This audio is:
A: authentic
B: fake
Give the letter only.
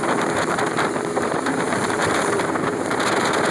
B